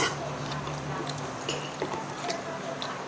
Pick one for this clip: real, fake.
real